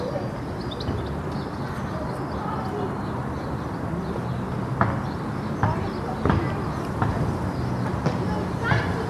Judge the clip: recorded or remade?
recorded